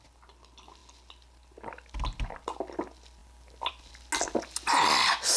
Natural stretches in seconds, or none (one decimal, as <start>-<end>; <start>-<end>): 0.0-3.2; 3.7-5.4